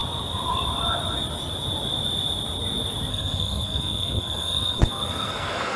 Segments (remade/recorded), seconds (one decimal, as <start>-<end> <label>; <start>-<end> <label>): 0.0-3.1 recorded; 3.1-5.8 remade